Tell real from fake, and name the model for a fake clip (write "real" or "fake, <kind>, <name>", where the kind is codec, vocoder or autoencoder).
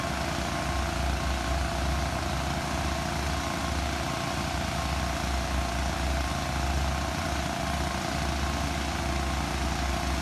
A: real